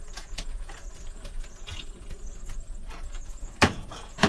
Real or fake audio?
fake